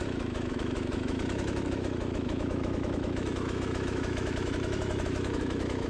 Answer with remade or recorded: remade